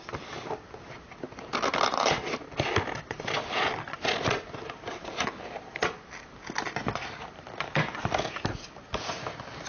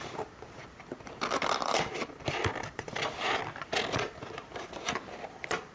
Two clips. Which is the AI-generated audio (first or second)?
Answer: second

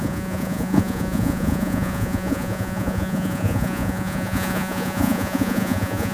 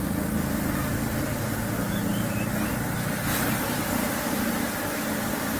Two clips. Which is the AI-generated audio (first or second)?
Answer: first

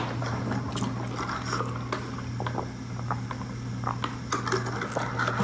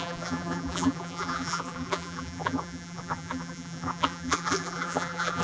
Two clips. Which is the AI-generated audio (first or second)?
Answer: second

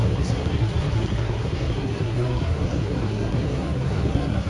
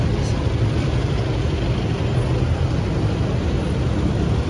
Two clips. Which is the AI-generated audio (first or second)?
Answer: first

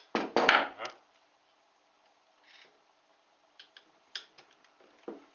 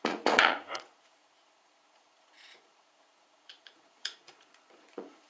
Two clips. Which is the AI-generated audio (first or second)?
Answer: second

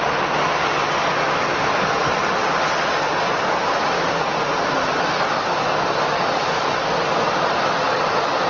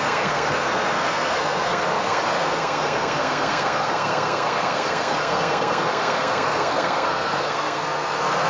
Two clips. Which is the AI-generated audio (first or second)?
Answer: second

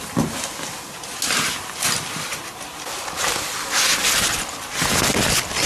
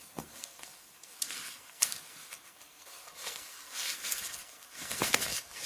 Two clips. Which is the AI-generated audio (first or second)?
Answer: second